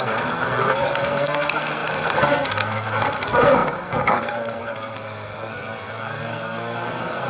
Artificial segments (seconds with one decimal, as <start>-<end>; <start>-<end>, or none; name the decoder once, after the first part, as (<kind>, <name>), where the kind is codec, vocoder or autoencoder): 0.0-7.3 (codec, SNAC)